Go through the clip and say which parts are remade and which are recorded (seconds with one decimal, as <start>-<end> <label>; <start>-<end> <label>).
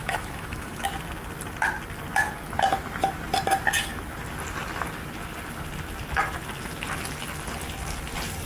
0.0-0.8 remade; 0.8-8.5 recorded